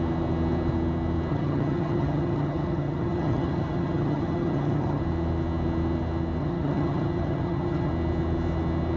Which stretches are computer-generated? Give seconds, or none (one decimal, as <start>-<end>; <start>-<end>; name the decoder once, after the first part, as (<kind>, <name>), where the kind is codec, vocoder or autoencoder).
1.3-5.0 (vocoder, HiFi-GAN); 6.4-7.9